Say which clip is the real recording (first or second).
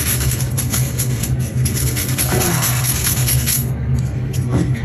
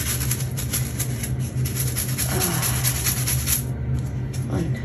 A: second